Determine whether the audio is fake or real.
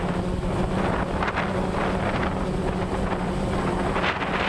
real